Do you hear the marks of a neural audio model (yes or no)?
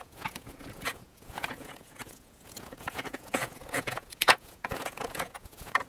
yes